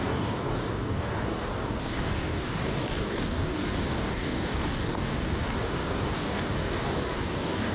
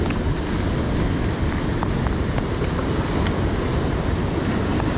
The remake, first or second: first